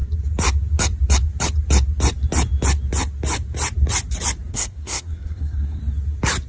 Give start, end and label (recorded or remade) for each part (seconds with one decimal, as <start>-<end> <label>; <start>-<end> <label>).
0.0-4.5 recorded; 4.5-5.8 remade; 5.8-6.5 recorded